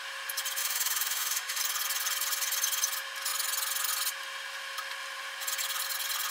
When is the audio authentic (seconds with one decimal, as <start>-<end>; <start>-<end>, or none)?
0.0-0.6; 1.6-6.3